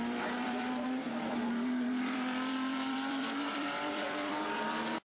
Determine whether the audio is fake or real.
fake